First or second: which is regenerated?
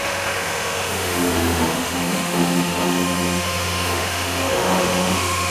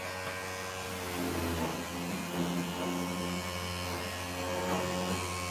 first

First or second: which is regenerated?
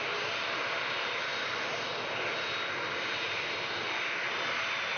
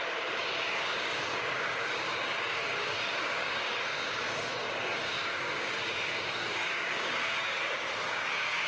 second